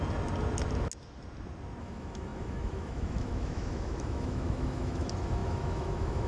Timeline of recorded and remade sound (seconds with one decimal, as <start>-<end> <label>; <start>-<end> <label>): 0.0-1.8 recorded; 1.8-6.3 remade